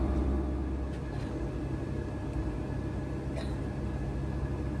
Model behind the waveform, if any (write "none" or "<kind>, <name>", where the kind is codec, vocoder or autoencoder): none